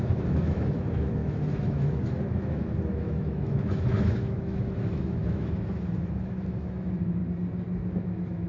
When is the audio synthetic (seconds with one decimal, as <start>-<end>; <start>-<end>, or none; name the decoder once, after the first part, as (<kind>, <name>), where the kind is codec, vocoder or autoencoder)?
0.0-7.2 (autoencoder, DAC-VAE); 7.9-8.5